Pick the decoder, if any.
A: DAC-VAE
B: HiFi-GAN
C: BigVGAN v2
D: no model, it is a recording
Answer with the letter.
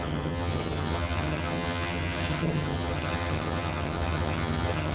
B